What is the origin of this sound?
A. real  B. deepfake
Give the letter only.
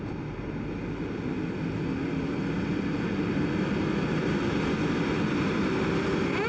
A